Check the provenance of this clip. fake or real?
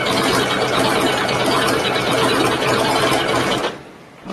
real